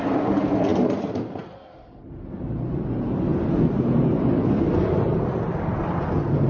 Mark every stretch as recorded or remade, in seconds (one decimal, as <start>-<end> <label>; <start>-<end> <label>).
0.0-6.5 recorded